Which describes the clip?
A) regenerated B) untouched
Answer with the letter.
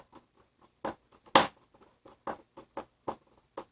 B